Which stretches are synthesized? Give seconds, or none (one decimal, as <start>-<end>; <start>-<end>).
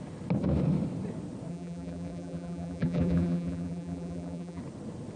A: 1.5-4.6